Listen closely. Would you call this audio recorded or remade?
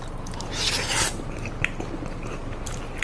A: recorded